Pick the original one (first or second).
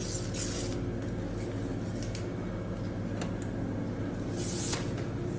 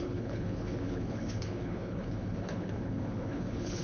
first